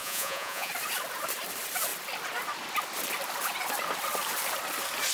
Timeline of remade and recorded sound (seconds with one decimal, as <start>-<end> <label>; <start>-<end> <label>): 0.0-0.7 remade; 0.7-5.1 recorded